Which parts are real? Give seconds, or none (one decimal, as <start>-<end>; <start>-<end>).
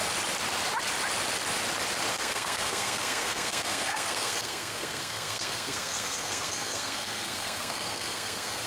0.0-2.1